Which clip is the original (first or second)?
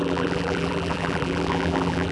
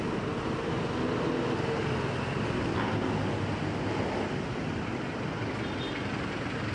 second